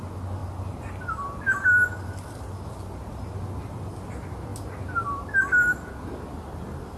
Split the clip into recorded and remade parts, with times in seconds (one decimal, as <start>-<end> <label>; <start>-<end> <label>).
0.0-7.0 recorded

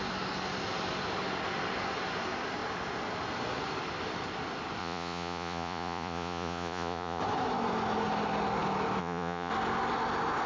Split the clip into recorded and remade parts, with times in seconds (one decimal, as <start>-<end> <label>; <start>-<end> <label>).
0.0-4.8 recorded; 4.8-7.2 remade; 7.2-9.0 recorded; 9.0-9.5 remade; 9.5-10.5 recorded

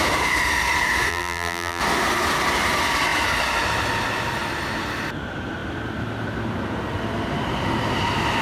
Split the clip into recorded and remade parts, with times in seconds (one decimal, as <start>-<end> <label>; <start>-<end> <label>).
0.0-1.1 recorded; 1.1-1.8 remade; 1.8-8.4 recorded